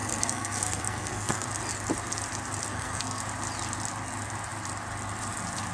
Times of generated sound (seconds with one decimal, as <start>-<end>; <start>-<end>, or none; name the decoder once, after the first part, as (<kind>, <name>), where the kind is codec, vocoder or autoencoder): 0.0-1.5 (codec, SNAC); 2.7-3.2